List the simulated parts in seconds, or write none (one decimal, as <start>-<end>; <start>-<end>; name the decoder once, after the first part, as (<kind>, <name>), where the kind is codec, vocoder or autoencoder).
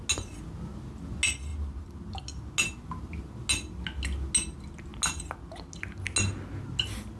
none